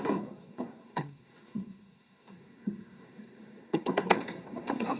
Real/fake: fake